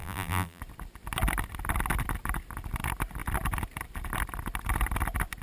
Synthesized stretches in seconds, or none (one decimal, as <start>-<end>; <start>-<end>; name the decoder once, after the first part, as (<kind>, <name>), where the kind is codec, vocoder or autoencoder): 0.0-0.6 (vocoder, BigVGAN v2)